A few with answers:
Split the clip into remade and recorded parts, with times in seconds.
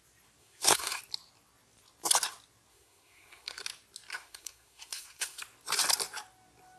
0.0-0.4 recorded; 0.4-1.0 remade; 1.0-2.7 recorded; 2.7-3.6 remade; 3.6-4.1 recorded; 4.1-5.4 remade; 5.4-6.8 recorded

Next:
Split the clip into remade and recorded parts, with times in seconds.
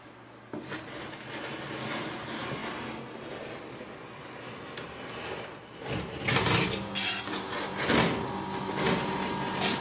0.0-9.8 recorded